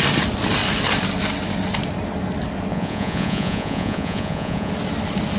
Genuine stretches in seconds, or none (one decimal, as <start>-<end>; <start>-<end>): 0.0-2.7; 4.7-5.4